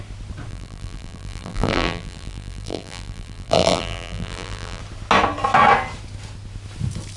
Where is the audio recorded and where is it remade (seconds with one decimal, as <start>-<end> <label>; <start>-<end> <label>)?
0.0-0.5 recorded; 0.5-4.8 remade; 4.8-7.2 recorded